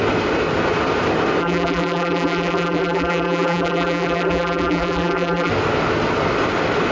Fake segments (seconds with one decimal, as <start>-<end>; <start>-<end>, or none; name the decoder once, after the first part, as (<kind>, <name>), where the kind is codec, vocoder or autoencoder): 1.4-5.5 (vocoder, BigVGAN v2)